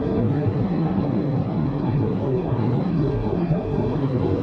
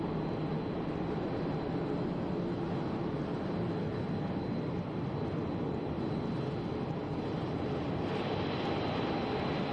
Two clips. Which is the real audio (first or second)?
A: second